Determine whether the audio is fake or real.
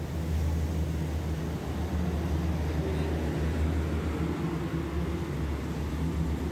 real